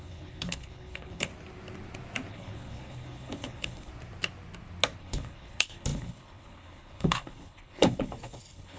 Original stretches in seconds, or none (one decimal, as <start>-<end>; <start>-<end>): 1.3-2.3; 3.9-5.0